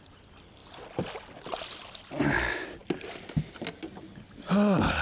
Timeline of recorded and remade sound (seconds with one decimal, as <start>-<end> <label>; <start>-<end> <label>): 0.0-5.0 recorded